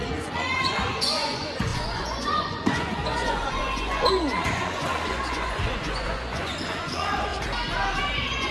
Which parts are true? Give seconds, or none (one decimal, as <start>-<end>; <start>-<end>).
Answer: 7.3-8.0